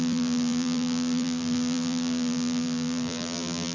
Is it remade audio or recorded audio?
remade